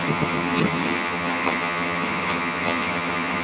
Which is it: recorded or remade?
remade